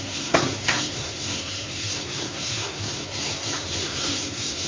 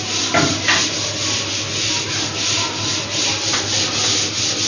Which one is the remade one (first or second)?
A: first